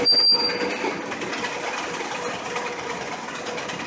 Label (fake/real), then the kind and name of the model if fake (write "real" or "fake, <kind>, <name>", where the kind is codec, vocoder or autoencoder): real